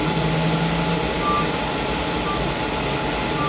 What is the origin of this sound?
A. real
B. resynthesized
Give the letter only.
A